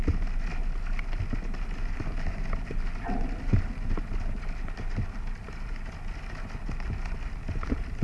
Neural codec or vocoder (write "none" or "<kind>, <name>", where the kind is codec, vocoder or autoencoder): none